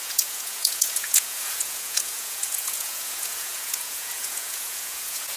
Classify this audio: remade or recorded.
remade